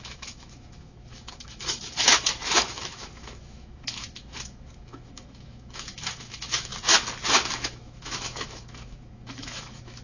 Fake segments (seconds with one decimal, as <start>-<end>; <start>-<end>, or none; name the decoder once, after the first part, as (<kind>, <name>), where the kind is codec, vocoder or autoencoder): 0.0-6.7 (autoencoder, DAC-VAE); 7.3-10.0